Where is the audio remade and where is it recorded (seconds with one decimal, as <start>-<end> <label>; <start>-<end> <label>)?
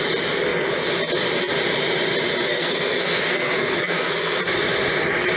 0.0-2.5 recorded; 2.5-4.4 remade; 4.4-5.4 recorded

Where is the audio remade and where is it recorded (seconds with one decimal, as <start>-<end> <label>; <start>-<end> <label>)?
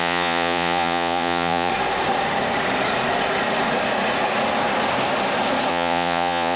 0.0-1.7 remade; 1.7-5.7 recorded; 5.7-6.6 remade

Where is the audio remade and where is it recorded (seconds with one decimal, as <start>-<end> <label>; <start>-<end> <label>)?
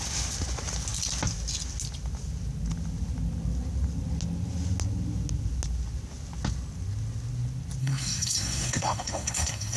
0.0-7.8 recorded; 7.8-9.8 remade